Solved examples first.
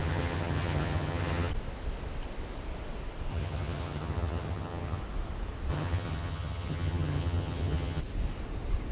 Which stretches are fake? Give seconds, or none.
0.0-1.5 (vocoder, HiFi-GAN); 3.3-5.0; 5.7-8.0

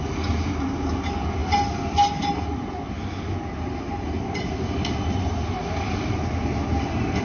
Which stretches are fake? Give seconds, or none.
none

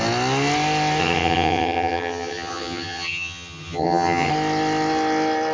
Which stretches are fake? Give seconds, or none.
1.0-4.3 (vocoder, HiFi-GAN)

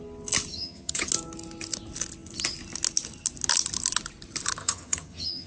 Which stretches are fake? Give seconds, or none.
0.5-1.1 (vocoder, HiFi-GAN); 4.6-5.5

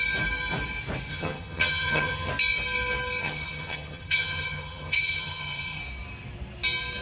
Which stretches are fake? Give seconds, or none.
1.1-2.3 (vocoder, HiFi-GAN); 3.2-5.8

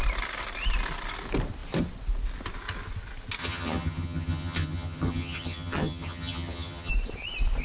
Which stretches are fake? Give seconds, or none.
3.4-6.9 (vocoder, HiFi-GAN)

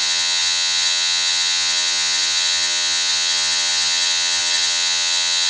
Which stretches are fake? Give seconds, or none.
0.0-5.5 (vocoder, HiFi-GAN)

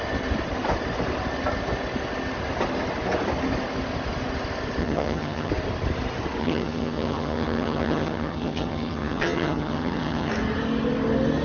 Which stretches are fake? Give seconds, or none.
4.8-5.5 (vocoder, HiFi-GAN); 6.4-10.3